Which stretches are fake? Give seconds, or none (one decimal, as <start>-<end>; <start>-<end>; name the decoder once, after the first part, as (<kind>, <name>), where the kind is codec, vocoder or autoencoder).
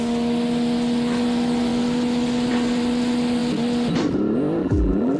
4.6-5.2 (vocoder, BigVGAN v2)